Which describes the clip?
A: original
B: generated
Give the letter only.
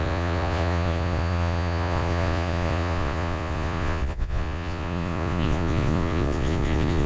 B